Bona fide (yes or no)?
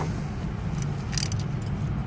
yes